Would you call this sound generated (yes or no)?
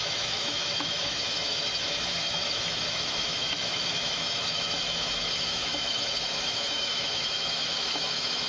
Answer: yes